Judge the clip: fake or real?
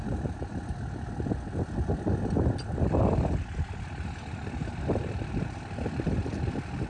real